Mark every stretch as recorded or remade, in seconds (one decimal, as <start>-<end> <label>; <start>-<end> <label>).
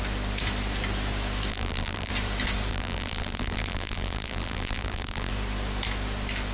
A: 0.0-1.5 recorded; 1.5-2.1 remade; 2.1-2.7 recorded; 2.7-5.3 remade; 5.3-6.5 recorded